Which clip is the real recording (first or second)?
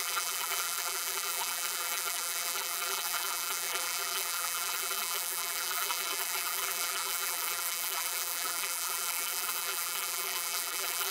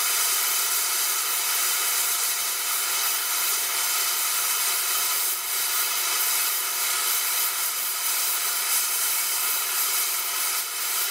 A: second